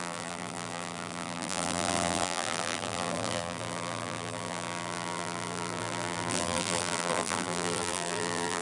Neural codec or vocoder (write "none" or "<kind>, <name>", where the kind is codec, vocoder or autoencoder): vocoder, BigVGAN v2